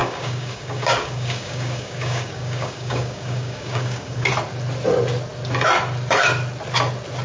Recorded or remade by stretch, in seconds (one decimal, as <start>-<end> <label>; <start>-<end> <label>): 0.0-4.3 remade; 4.3-7.2 recorded

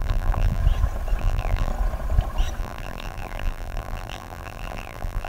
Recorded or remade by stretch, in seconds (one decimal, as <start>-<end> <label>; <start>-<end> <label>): 0.0-0.6 remade; 0.6-1.2 recorded; 1.2-1.7 remade; 1.7-2.6 recorded; 2.6-5.3 remade

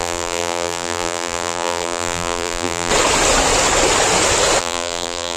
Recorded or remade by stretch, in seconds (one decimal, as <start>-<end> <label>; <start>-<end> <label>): 0.0-2.9 remade; 2.9-4.6 recorded; 4.6-5.4 remade